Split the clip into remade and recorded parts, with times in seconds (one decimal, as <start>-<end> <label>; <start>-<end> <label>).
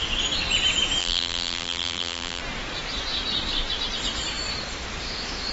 0.0-1.0 recorded; 1.0-2.4 remade; 2.4-5.5 recorded